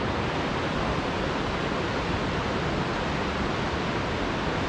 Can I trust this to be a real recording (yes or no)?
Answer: yes